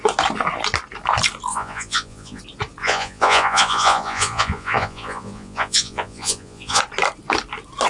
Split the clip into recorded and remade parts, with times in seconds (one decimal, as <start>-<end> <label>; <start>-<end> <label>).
0.0-1.5 recorded; 1.5-2.4 remade; 2.4-2.8 recorded; 2.8-6.8 remade; 6.8-7.9 recorded